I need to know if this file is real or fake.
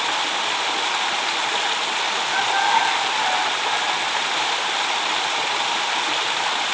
real